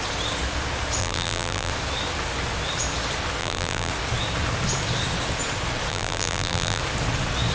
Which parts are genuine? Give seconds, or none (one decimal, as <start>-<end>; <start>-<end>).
0.0-1.0; 1.7-3.4; 3.9-5.9; 6.8-7.5